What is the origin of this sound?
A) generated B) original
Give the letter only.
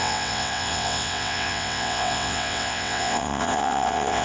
A